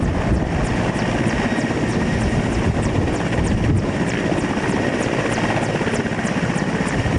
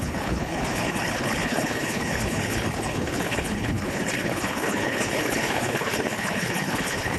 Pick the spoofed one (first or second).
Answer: second